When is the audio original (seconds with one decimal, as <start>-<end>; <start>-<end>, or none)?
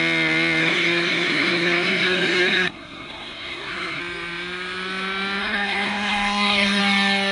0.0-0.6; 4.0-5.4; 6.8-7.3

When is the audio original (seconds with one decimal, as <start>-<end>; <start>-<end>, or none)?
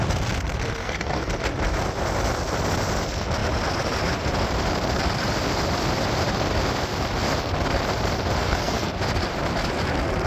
0.0-0.8; 1.3-8.4; 8.9-10.3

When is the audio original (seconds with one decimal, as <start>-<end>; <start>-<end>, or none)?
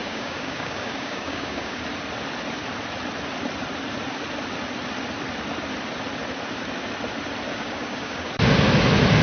1.8-7.5; 8.3-9.2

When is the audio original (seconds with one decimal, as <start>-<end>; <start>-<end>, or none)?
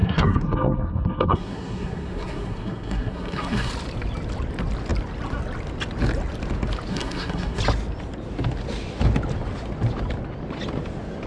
3.7-6.9; 7.6-11.3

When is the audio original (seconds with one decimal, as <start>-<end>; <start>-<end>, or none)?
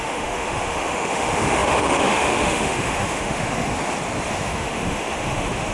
3.7-4.3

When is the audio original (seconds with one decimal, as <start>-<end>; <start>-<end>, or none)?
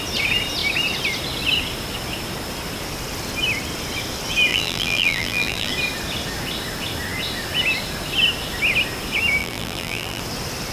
0.0-4.5; 5.7-9.4; 10.2-10.7